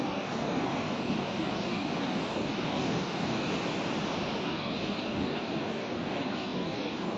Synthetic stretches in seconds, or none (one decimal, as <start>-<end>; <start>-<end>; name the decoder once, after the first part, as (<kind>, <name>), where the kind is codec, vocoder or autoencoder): 0.0-3.5 (codec, DAC); 4.4-7.2